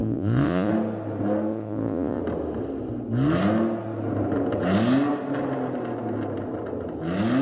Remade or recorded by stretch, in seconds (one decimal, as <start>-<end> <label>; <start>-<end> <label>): 0.0-0.7 remade; 0.7-1.5 recorded; 1.5-2.2 remade; 2.2-7.4 recorded